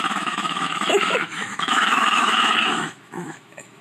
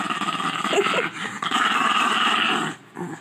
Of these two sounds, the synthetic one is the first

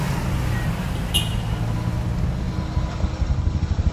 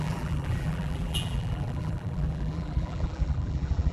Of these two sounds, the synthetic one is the second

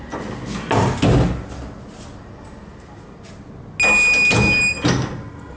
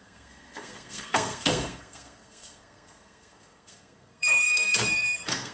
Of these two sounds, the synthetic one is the second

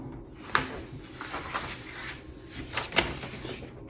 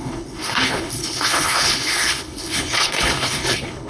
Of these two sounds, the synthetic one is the second